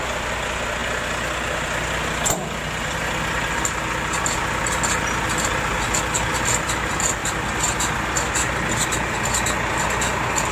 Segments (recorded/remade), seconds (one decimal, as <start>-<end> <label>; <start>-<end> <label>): 0.0-10.5 recorded